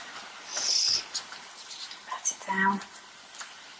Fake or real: real